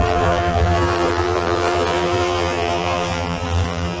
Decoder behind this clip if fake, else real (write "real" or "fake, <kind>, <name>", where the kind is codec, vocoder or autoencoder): fake, vocoder, BigVGAN v2